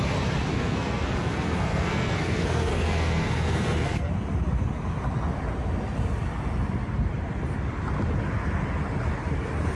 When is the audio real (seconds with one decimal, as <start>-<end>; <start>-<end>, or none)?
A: 0.0-0.5; 4.1-9.8